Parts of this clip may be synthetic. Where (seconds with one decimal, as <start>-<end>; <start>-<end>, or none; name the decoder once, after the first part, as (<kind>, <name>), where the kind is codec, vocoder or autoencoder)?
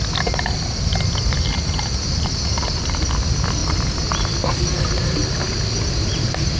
none